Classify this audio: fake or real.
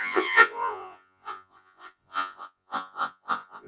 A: fake